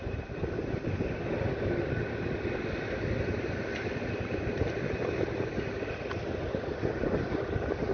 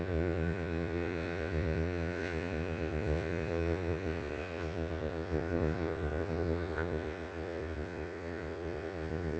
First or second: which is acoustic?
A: first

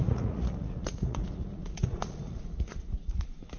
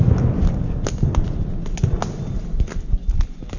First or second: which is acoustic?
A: second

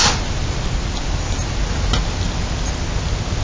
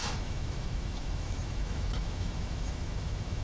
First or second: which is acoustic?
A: first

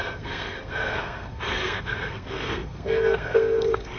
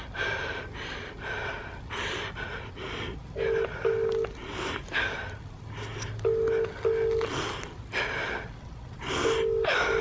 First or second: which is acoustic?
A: second